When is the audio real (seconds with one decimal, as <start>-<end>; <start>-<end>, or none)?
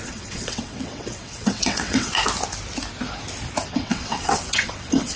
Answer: 2.1-3.7